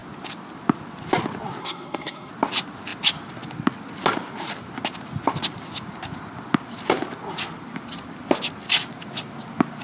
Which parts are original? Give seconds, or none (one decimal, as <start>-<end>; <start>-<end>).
0.0-1.6; 2.3-9.8